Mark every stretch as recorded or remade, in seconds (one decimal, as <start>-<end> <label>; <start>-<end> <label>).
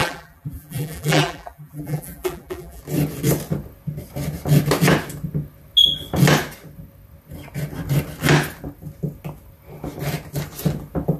0.0-2.8 remade; 2.8-11.2 recorded